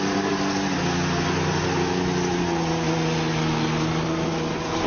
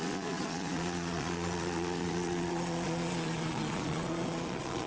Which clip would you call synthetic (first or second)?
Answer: second